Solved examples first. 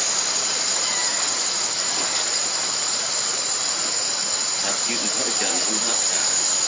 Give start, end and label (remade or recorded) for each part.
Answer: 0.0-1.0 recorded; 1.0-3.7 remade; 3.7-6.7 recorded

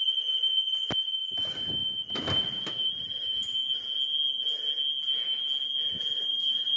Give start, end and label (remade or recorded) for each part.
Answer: 0.0-3.6 remade; 3.6-6.2 recorded; 6.2-6.8 remade

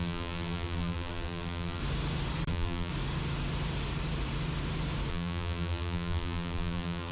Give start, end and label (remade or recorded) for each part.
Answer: 0.0-1.8 remade; 1.8-2.5 recorded; 2.5-2.9 remade; 2.9-5.1 recorded; 5.1-7.1 remade

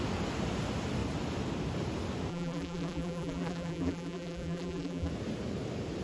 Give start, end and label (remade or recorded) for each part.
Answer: 0.0-2.3 recorded; 2.3-5.1 remade; 5.1-6.0 recorded

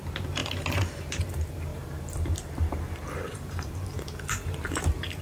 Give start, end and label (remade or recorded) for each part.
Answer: 0.0-5.2 remade